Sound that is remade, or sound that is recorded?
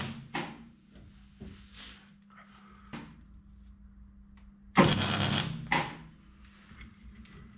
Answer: recorded